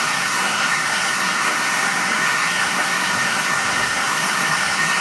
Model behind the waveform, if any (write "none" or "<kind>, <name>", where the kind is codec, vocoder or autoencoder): codec, SNAC